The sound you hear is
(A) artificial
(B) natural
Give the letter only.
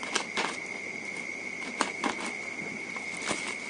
B